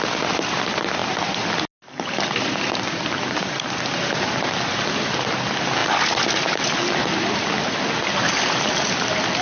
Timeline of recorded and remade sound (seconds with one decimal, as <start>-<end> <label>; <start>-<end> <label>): 0.0-9.4 recorded